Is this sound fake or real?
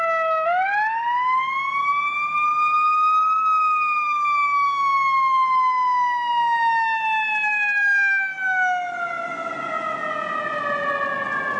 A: real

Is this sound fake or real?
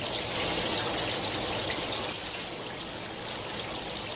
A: real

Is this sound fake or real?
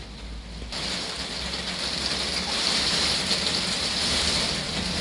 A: real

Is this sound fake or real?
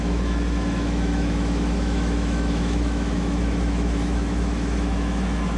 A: fake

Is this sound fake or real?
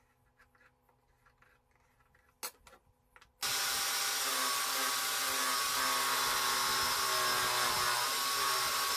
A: real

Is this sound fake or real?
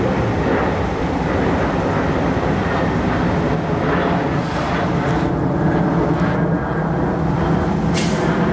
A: real